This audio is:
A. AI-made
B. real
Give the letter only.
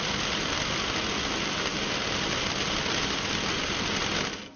B